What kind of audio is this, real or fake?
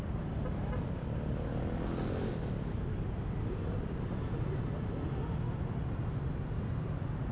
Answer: real